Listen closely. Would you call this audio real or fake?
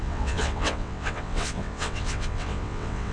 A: fake